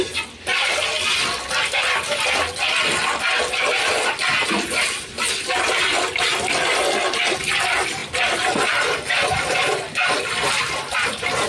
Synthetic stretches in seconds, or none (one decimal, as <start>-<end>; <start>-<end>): 8.0-9.5